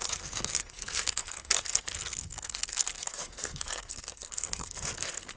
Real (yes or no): no